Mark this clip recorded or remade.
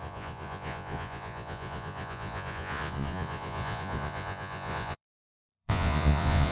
remade